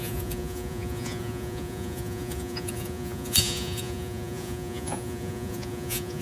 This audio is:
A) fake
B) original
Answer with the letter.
A